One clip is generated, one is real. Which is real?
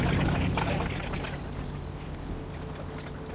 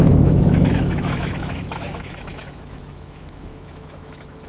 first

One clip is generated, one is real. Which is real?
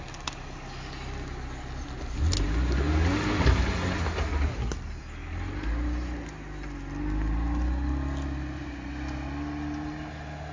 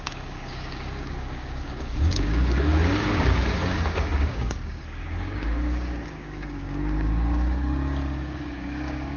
first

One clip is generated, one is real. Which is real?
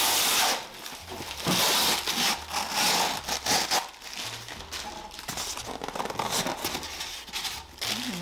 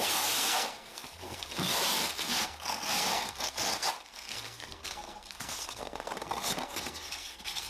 first